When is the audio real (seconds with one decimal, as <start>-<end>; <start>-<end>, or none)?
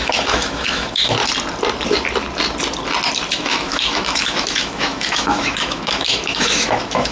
1.2-3.3